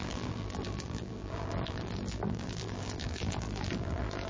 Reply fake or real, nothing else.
fake